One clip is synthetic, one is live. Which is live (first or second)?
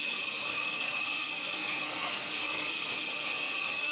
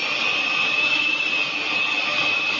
second